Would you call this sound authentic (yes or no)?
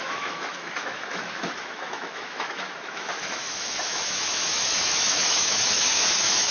no